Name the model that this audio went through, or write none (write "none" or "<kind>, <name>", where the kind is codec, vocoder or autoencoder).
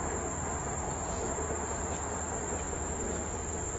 none